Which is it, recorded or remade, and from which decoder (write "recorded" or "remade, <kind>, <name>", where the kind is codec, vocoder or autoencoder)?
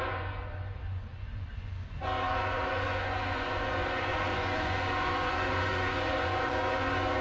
remade, vocoder, Vocos